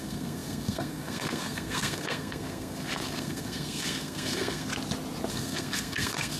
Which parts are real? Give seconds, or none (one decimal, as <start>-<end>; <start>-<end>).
4.7-5.3